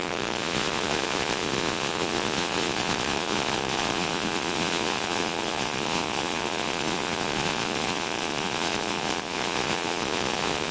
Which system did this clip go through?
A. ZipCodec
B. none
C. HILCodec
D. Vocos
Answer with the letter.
D